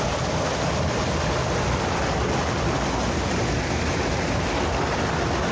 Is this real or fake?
real